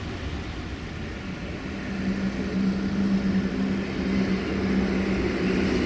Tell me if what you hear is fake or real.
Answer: real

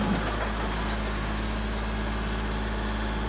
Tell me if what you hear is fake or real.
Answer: real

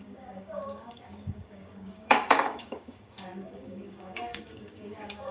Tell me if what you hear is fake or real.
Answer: fake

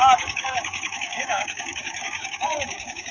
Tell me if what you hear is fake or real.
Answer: fake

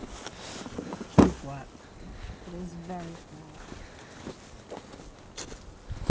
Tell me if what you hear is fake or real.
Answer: real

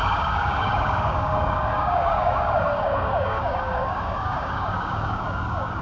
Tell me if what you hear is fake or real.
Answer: fake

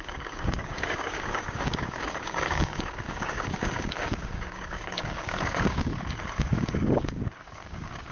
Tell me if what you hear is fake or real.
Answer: fake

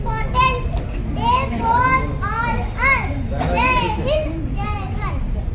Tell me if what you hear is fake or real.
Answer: real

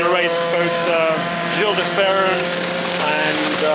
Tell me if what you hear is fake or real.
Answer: fake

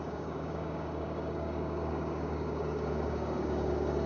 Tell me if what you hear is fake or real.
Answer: fake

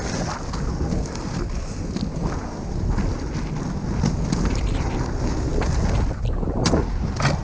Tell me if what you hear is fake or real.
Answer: real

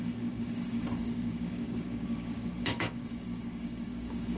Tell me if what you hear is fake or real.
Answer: fake